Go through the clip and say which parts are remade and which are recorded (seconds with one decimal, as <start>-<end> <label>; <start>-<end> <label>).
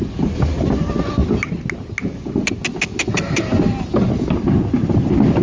0.0-5.4 recorded